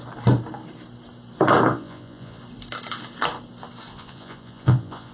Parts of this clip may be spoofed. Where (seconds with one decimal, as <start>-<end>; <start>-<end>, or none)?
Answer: 1.7-2.4; 3.9-5.1